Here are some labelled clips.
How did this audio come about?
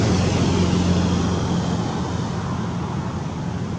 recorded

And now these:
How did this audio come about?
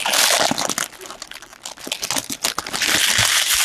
recorded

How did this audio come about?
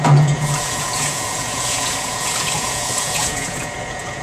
remade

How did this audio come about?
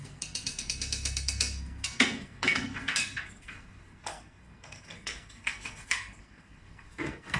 remade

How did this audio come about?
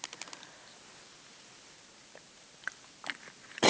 recorded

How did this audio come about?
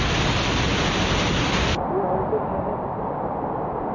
recorded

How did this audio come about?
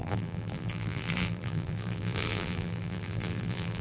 remade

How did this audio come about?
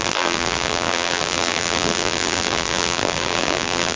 remade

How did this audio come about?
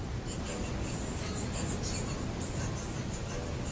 recorded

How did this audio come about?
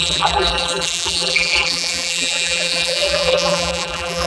remade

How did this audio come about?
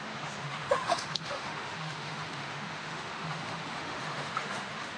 remade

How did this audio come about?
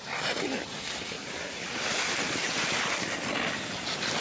recorded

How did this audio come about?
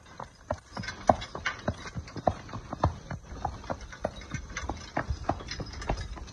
recorded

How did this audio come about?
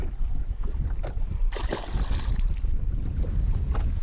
recorded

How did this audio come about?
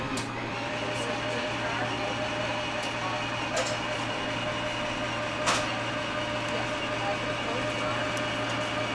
recorded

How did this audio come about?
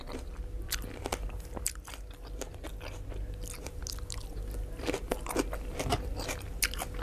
recorded